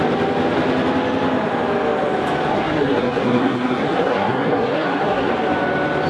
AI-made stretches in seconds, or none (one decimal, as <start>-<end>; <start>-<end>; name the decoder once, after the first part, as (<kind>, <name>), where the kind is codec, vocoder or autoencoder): 2.5-5.3 (codec, SNAC)